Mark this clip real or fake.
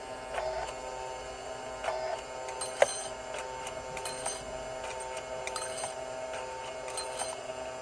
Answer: real